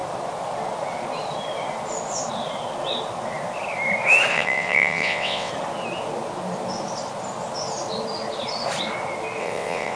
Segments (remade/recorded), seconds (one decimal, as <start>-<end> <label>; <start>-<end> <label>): 0.0-4.3 recorded; 4.3-5.5 remade; 5.5-9.4 recorded; 9.4-10.0 remade

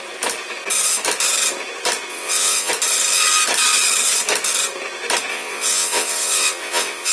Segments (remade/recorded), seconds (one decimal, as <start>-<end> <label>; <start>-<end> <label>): 0.0-2.1 recorded; 2.1-2.7 remade; 2.7-5.3 recorded; 5.3-7.1 remade

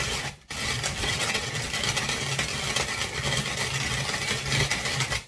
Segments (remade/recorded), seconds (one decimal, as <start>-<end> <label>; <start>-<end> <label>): 0.0-1.0 recorded; 1.0-1.7 remade; 1.7-5.3 recorded